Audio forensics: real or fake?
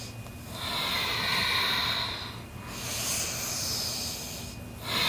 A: real